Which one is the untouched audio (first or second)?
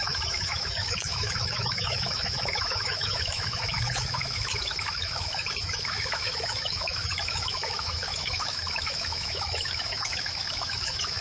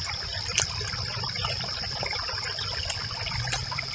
second